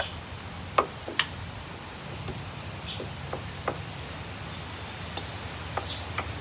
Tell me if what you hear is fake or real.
real